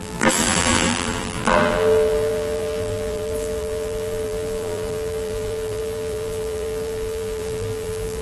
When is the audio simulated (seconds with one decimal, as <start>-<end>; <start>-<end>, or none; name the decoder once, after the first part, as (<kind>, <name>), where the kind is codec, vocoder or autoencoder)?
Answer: 0.0-8.2 (vocoder, BigVGAN v2)